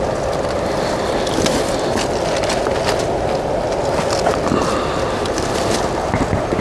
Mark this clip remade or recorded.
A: recorded